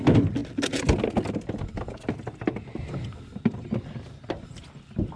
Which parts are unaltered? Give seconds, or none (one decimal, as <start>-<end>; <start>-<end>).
0.0-5.2